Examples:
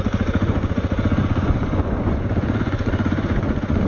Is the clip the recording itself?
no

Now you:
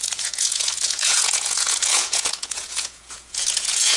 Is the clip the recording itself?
no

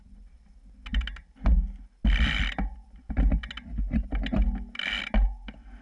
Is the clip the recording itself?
yes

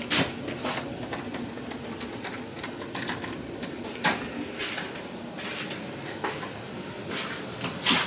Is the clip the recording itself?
yes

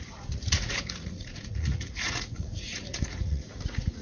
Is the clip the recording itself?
no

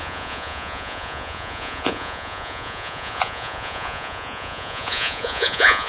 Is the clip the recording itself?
no